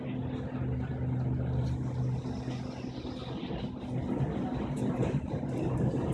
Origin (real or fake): real